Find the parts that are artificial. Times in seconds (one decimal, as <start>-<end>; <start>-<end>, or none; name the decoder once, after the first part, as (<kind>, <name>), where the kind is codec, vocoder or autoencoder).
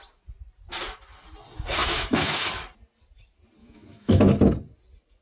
1.8-2.5 (autoencoder, DAC-VAE); 3.6-4.3